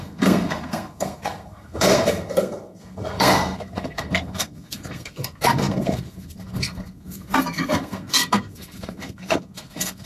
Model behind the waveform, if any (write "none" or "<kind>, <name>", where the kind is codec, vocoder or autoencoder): codec, SNAC